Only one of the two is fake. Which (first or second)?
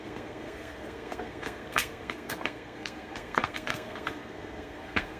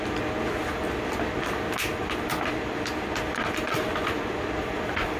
first